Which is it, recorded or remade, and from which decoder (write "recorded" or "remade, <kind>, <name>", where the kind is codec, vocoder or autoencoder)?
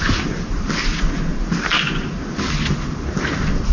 recorded